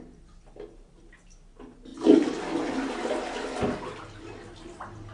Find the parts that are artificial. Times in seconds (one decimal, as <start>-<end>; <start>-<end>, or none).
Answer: none